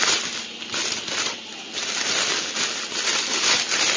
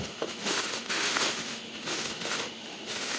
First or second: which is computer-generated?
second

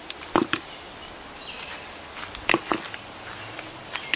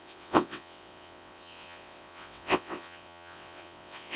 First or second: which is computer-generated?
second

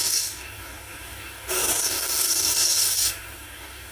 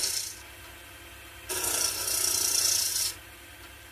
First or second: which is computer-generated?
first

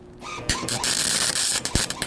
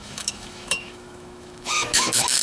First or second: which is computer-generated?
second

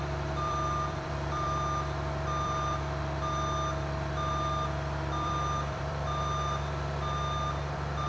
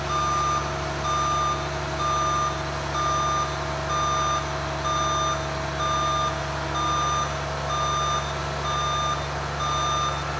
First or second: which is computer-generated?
first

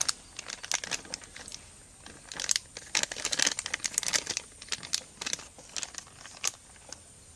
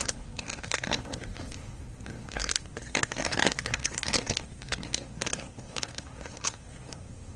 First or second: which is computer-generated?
second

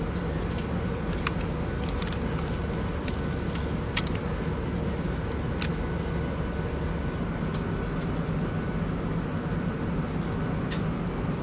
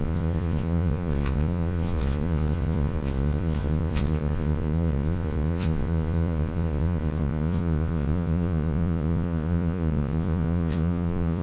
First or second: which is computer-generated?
second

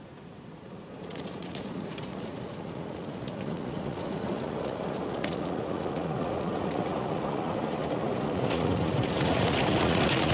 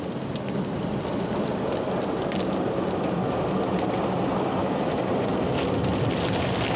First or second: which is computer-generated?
first